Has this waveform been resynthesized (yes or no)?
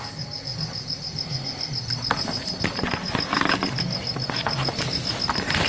no